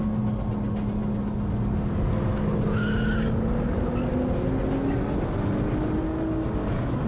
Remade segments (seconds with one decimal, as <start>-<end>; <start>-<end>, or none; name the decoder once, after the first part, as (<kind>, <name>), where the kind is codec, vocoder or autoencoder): none